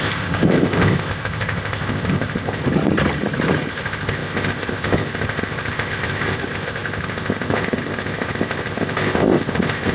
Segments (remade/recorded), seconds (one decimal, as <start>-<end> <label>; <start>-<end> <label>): 0.0-2.6 remade; 2.6-3.7 recorded; 3.7-9.9 remade